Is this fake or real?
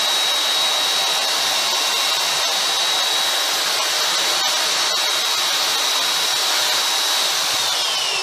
real